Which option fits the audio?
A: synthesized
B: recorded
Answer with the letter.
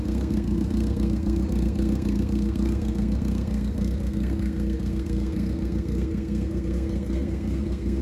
A